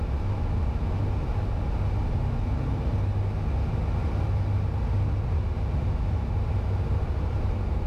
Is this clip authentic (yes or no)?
yes